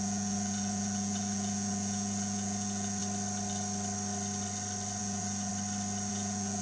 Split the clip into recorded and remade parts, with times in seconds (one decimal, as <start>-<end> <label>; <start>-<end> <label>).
0.0-3.0 remade; 3.0-5.0 recorded; 5.0-5.5 remade; 5.5-6.1 recorded; 6.1-6.6 remade